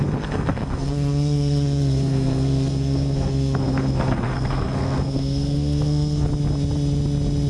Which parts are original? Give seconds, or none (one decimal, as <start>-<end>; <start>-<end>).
6.3-7.5